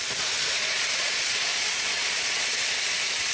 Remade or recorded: remade